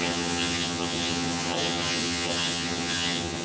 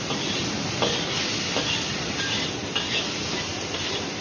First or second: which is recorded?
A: second